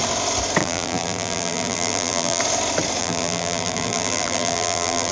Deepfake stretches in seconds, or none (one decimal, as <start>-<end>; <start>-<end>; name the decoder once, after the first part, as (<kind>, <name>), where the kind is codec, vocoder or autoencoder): 0.6-2.4 (vocoder, BigVGAN v2); 3.0-5.1